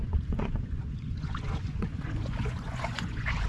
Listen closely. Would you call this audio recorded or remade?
remade